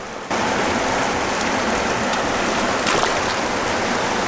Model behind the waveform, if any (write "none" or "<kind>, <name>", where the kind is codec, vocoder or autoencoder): none